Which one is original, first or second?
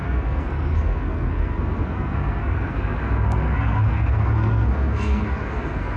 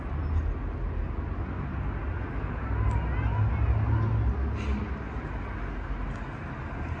second